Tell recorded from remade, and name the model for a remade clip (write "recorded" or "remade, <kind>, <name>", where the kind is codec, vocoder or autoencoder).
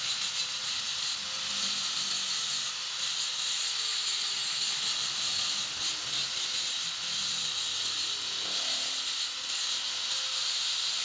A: recorded